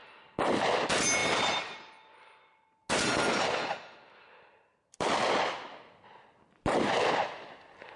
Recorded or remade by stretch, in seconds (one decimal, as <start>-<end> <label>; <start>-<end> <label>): 0.0-8.0 recorded